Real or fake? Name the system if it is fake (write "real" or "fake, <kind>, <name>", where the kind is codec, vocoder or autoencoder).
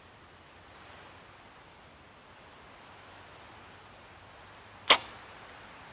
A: real